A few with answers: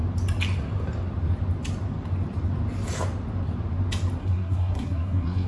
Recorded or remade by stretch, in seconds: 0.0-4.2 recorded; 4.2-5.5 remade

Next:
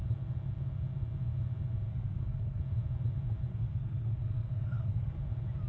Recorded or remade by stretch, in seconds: 0.0-1.9 recorded; 1.9-2.6 remade; 2.6-3.5 recorded; 3.5-5.1 remade; 5.1-5.7 recorded

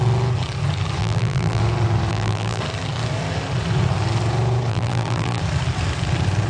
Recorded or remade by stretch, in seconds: 0.0-1.0 recorded; 1.0-1.6 remade; 1.6-2.1 recorded; 2.1-2.6 remade; 2.6-4.7 recorded; 4.7-5.4 remade; 5.4-6.5 recorded

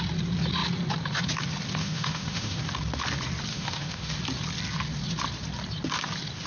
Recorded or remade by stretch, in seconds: 0.0-1.8 recorded; 1.8-2.6 remade; 2.6-3.5 recorded; 3.5-4.1 remade; 4.1-6.5 recorded

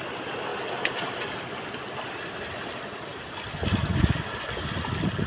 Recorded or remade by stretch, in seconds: 0.0-5.3 recorded

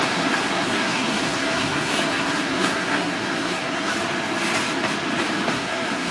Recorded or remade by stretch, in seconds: 0.0-3.9 remade; 3.9-5.5 recorded; 5.5-6.1 remade

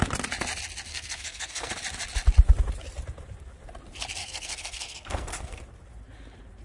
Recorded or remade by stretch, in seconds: 0.0-0.9 recorded; 0.9-1.7 remade; 1.7-4.2 recorded; 4.2-5.6 remade; 5.6-6.6 recorded